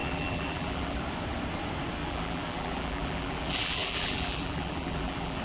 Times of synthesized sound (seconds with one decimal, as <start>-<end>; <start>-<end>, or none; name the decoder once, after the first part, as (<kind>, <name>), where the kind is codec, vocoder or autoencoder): 0.0-1.0 (vocoder, BigVGAN v2); 2.0-5.4